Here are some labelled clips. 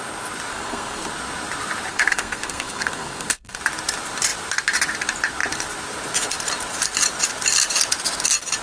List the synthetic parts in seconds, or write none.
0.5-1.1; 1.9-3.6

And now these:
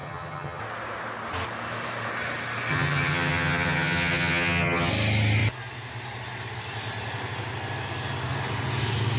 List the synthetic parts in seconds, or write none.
0.0-0.6; 2.7-4.9

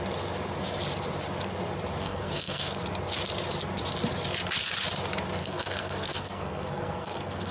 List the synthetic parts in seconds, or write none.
2.0-2.8; 5.4-7.5

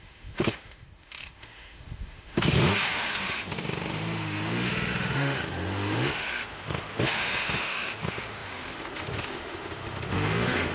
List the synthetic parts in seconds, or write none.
0.0-10.7

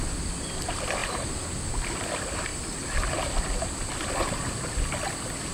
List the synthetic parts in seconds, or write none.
1.0-1.7

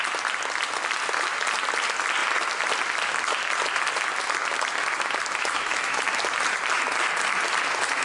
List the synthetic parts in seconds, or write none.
5.4-6.0

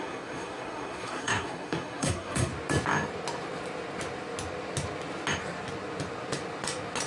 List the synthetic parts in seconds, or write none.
0.0-2.5